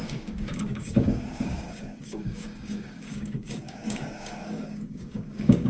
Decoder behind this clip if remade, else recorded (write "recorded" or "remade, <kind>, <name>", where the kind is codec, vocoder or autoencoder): remade, codec, DAC